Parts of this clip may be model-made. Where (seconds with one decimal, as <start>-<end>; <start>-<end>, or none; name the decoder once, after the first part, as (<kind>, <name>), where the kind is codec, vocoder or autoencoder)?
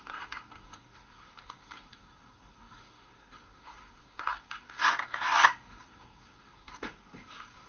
0.0-7.7 (codec, SNAC)